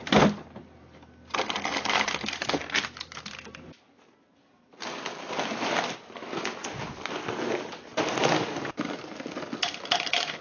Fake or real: real